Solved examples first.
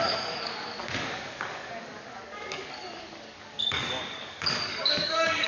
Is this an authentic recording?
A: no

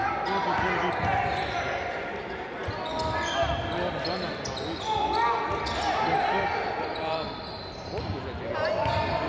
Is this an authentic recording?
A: yes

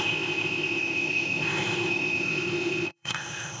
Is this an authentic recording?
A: no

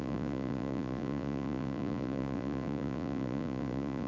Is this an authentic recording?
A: no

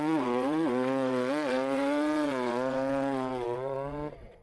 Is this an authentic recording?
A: no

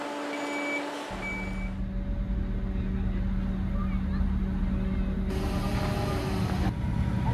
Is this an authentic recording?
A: yes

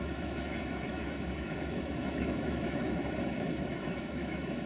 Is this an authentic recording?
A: no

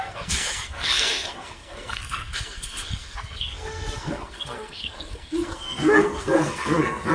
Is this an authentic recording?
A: no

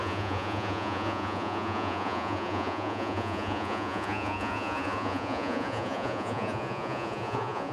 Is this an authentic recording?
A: no